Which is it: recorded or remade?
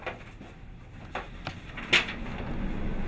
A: recorded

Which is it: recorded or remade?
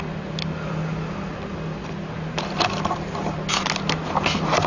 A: recorded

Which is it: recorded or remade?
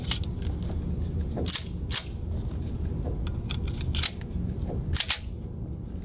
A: recorded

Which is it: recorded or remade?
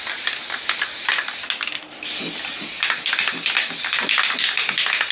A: recorded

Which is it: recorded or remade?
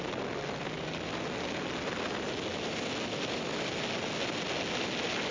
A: recorded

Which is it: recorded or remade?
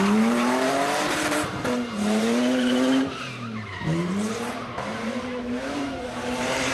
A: remade